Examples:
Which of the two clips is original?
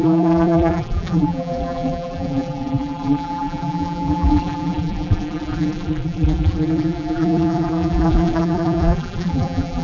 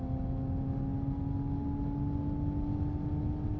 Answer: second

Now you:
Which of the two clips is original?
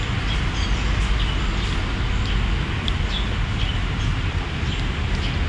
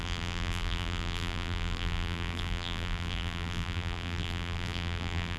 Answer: first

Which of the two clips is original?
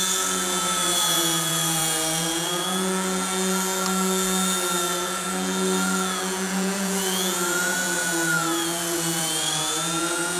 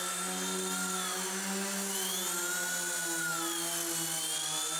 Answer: second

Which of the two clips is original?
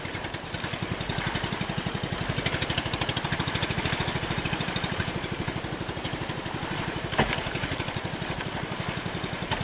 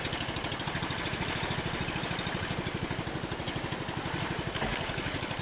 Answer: second